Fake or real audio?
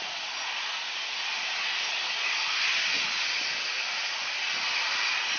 real